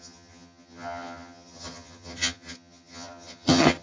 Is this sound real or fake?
fake